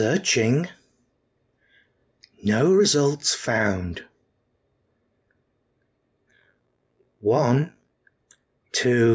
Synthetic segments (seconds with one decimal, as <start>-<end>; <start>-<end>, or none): 6.3-7.9